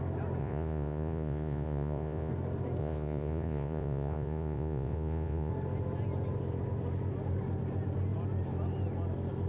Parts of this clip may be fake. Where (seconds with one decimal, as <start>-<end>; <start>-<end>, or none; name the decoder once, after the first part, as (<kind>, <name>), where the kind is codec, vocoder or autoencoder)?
0.4-2.3 (vocoder, Vocos); 2.8-5.5